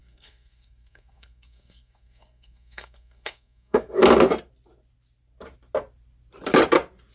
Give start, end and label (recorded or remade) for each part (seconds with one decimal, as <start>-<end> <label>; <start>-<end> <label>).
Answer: 0.0-4.0 remade; 4.0-7.1 recorded